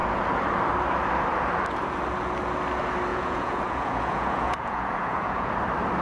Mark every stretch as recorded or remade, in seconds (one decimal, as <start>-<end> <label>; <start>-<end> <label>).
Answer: 0.0-3.1 recorded; 3.1-5.5 remade; 5.5-6.0 recorded